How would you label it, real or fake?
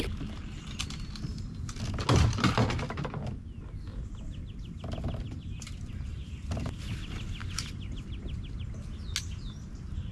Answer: real